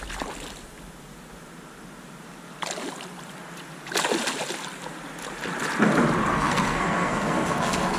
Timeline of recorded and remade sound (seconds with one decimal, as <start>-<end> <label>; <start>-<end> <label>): 0.0-6.3 recorded; 6.3-8.0 remade